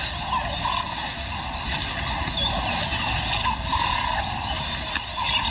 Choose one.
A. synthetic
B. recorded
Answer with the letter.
B